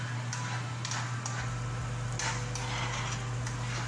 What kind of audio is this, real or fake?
real